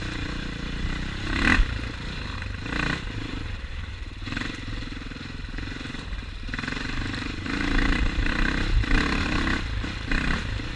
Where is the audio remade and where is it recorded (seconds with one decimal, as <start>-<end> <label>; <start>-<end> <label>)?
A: 0.0-3.3 recorded; 3.3-8.3 remade; 8.3-10.8 recorded